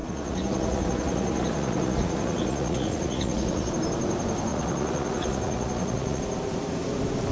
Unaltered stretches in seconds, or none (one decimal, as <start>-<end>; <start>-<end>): 3.7-4.5; 6.2-7.3